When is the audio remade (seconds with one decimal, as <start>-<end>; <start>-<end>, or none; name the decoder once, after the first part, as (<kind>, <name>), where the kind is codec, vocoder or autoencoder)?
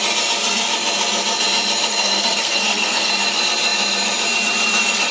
1.9-3.1 (codec, SNAC)